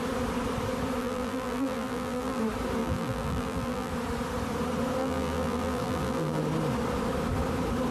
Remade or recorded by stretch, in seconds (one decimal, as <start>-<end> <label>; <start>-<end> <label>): 0.0-1.0 recorded; 1.0-2.4 remade; 2.4-2.8 recorded; 2.8-3.9 remade; 3.9-5.0 recorded; 5.0-6.4 remade; 6.4-7.9 recorded

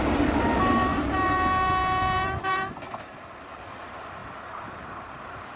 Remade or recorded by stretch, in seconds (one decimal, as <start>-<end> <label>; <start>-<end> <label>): 0.0-0.9 recorded; 0.9-2.7 remade; 2.7-4.2 recorded; 4.2-5.6 remade